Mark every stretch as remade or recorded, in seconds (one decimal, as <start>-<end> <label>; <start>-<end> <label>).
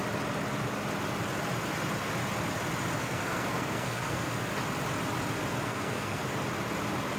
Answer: 0.0-3.0 recorded; 3.0-4.5 remade; 4.5-5.6 recorded; 5.6-6.2 remade; 6.2-7.2 recorded